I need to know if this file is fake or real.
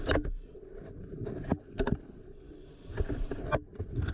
real